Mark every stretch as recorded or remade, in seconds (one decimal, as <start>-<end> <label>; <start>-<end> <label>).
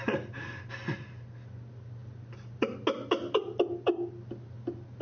0.0-5.0 recorded